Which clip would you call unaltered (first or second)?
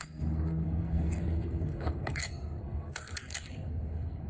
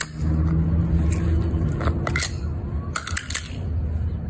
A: second